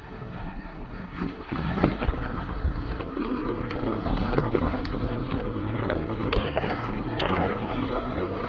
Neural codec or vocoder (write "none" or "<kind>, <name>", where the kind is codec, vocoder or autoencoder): codec, SNAC